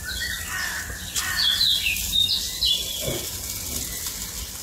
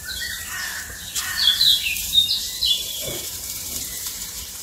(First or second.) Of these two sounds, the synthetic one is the second